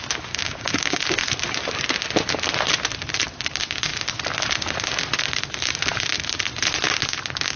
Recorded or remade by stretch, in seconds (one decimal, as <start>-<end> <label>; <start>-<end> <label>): 0.0-0.4 recorded; 0.4-1.0 remade; 1.0-7.6 recorded